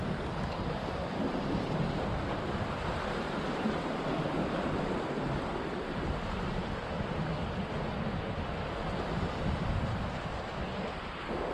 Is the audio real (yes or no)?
yes